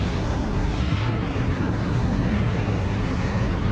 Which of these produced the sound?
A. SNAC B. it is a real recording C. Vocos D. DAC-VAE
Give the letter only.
A